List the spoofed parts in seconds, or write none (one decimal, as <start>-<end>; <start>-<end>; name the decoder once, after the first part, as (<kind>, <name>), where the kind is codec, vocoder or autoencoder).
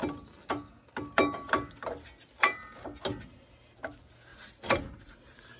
4.3-5.6 (vocoder, BigVGAN v2)